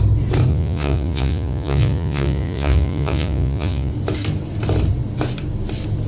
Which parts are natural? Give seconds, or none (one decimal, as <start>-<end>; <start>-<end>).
0.0-0.5; 3.9-6.1

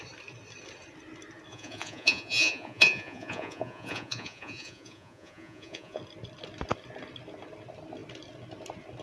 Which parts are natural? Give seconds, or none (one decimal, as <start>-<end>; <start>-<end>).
0.0-1.5; 6.0-9.0

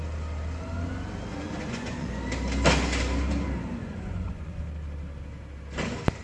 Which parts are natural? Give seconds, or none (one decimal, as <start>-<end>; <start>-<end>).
0.0-1.3; 2.2-3.8; 4.6-6.2

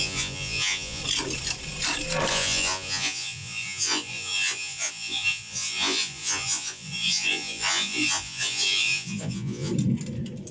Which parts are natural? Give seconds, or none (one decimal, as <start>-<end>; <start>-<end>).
1.0-2.3; 9.7-10.5